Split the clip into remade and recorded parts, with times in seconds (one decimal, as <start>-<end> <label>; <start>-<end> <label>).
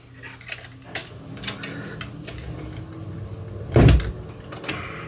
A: 0.0-5.1 recorded